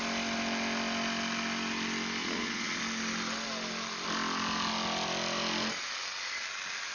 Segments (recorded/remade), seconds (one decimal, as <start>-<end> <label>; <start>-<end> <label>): 0.0-2.2 recorded; 2.2-2.8 remade; 2.8-6.9 recorded